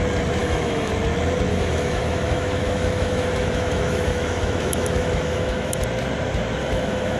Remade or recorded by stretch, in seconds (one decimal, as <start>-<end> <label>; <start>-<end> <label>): 0.0-0.4 recorded; 0.4-0.9 remade; 0.9-1.5 recorded; 1.5-5.8 remade; 5.8-6.6 recorded; 6.6-7.2 remade